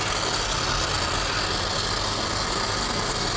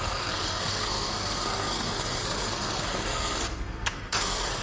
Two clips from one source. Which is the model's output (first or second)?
second